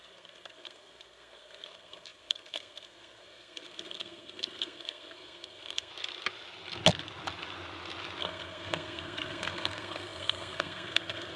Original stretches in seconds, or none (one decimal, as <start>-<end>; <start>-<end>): 5.9-8.2